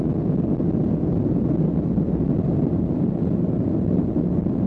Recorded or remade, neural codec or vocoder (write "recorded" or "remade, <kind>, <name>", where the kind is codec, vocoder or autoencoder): recorded